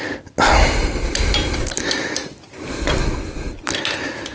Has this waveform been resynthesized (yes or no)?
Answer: no